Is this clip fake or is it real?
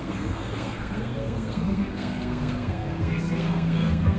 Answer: fake